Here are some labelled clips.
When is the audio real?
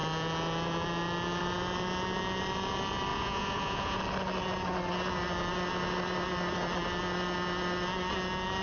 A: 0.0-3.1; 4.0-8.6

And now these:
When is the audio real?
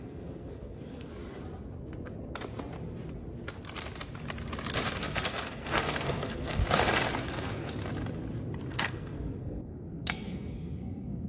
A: 1.1-5.0; 6.6-7.2; 7.8-8.7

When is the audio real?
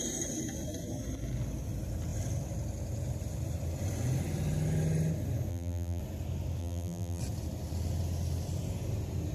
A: 0.0-5.5; 6.0-6.6; 7.2-9.3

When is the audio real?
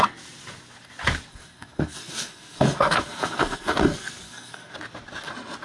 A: 0.0-1.3; 4.7-5.6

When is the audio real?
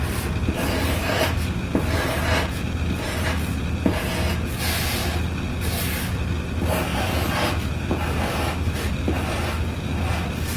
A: 0.0-1.0; 1.6-6.9; 7.7-10.6